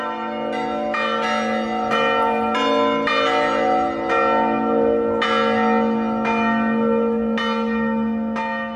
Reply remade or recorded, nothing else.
recorded